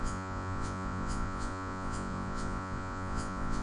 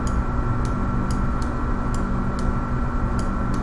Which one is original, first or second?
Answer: second